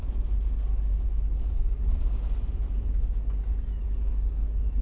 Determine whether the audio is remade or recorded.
recorded